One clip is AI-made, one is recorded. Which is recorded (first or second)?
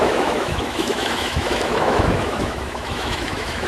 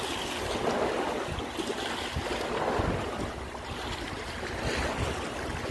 second